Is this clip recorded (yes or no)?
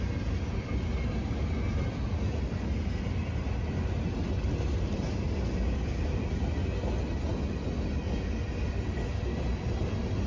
yes